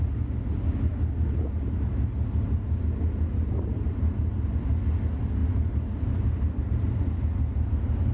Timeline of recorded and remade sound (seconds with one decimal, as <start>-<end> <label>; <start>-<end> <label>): 0.0-8.1 recorded